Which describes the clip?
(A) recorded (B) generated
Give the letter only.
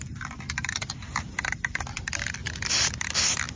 A